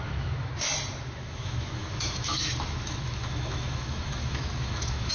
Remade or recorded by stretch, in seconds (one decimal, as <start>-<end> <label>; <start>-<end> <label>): 0.0-0.5 remade; 0.5-1.0 recorded; 1.0-5.1 remade